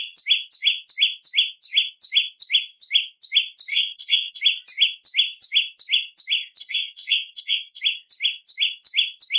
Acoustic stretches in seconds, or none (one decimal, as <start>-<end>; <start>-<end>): 0.0-3.7; 4.4-6.6; 7.8-9.4